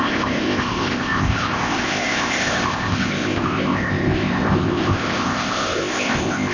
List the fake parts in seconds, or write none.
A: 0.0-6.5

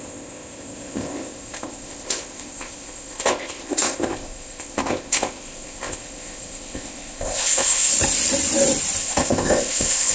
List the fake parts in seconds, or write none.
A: 0.0-7.9; 9.0-10.1

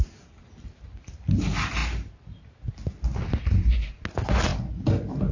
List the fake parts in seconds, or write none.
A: none

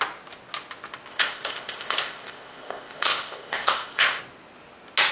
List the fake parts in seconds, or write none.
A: 1.1-4.2

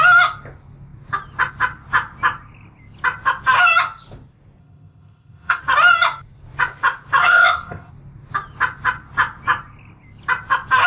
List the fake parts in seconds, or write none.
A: 4.6-5.6; 7.2-7.9

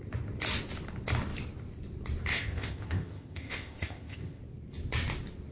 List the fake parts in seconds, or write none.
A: 2.3-4.4

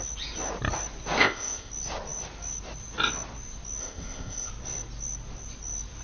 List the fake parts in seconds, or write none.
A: 1.2-1.7; 3.8-4.5